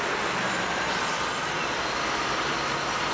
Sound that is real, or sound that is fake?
real